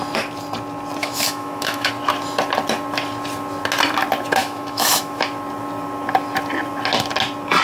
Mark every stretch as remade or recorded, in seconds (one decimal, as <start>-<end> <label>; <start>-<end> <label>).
0.0-1.0 recorded; 1.0-1.9 remade; 1.9-4.4 recorded; 4.4-5.2 remade; 5.2-7.6 recorded